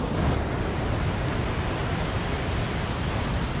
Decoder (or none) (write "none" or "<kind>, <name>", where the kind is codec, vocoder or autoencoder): none